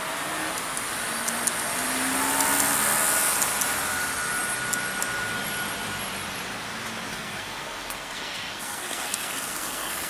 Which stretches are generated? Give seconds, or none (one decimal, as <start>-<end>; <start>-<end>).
7.1-10.1